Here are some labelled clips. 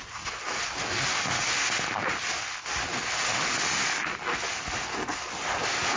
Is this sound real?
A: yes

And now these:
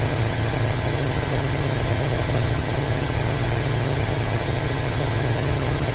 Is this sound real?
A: no